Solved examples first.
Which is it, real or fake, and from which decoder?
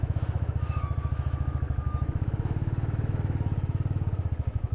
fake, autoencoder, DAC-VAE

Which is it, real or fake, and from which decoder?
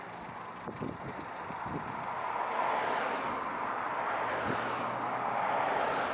real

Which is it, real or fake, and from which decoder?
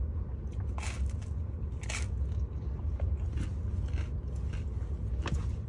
real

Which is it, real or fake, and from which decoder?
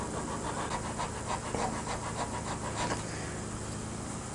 real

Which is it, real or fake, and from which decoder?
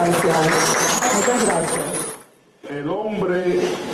fake, vocoder, BigVGAN v2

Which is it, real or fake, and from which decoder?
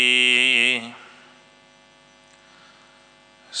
real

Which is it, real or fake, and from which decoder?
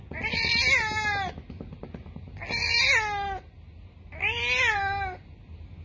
real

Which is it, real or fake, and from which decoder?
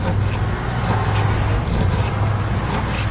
real